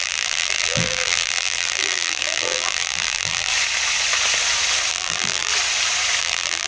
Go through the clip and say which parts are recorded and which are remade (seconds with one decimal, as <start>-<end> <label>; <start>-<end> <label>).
0.0-3.5 remade; 3.5-4.9 recorded; 4.9-5.5 remade; 5.5-6.2 recorded; 6.2-6.7 remade